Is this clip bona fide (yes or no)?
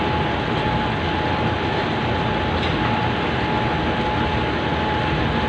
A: yes